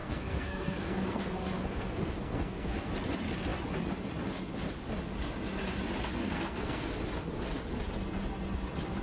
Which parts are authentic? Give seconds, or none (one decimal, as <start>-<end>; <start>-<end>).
2.9-6.2; 6.9-9.0